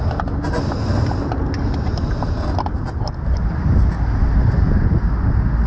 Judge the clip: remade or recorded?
recorded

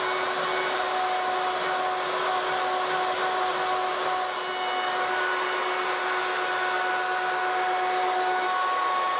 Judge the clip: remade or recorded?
recorded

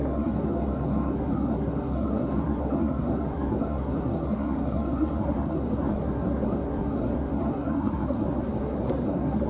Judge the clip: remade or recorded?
remade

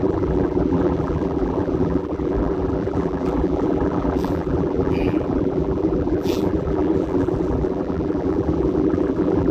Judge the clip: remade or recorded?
remade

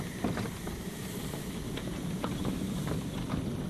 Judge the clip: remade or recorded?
recorded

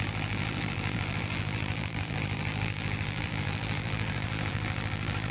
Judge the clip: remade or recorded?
remade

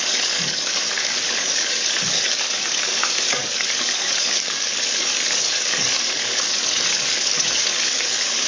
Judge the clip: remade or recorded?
remade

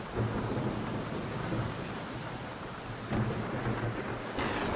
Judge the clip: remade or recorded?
recorded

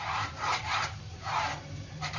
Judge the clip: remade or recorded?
remade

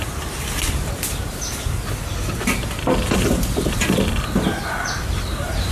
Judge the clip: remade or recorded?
recorded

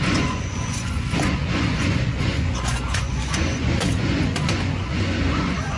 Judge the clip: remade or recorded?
remade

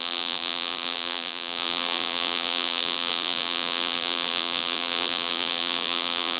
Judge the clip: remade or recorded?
remade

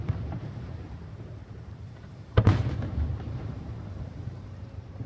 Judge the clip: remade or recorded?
remade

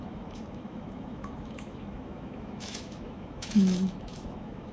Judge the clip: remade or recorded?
remade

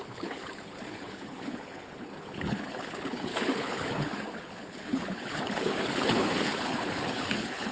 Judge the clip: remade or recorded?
remade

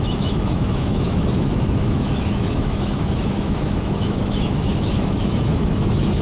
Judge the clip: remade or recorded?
remade